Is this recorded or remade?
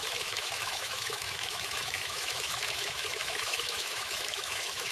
remade